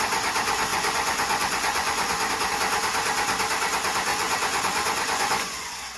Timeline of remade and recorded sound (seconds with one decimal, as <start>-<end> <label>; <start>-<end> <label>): 0.0-0.7 recorded; 0.7-2.3 remade; 2.3-4.1 recorded; 4.1-6.0 remade